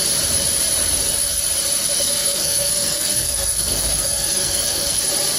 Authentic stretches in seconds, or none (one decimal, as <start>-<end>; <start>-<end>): 0.0-1.8; 5.0-5.4